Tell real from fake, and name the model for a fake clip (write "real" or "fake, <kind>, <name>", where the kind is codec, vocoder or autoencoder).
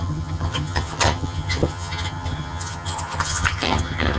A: fake, vocoder, HiFi-GAN